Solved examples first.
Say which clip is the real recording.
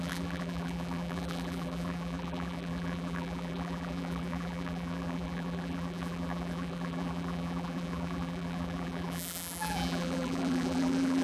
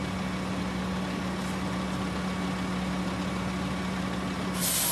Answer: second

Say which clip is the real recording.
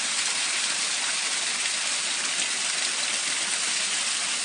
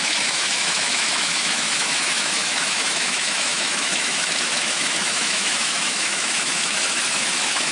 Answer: first